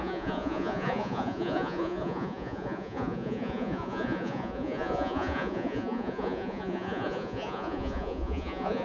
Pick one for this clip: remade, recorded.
remade